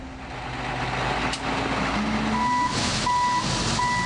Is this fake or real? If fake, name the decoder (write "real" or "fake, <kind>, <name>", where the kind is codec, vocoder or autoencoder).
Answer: real